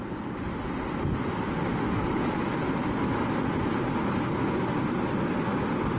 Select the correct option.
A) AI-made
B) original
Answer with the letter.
B